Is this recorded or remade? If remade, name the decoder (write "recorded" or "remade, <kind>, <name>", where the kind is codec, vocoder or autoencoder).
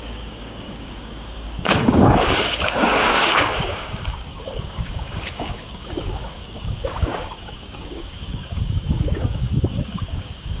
remade, codec, DAC